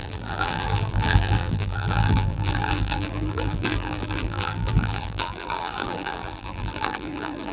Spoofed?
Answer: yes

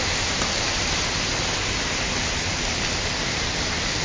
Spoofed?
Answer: no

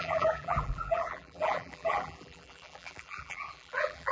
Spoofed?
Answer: yes